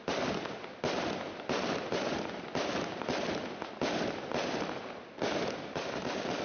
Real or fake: fake